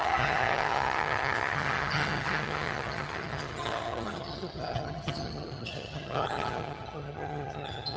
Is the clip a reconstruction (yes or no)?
yes